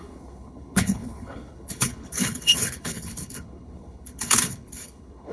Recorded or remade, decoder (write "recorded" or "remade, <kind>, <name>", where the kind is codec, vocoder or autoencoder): remade, codec, HILCodec